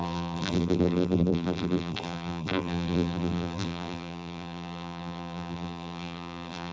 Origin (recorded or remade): remade